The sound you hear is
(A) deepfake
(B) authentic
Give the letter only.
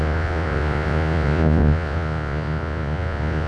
A